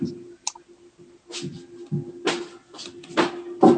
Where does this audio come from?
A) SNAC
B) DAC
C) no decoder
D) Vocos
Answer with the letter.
C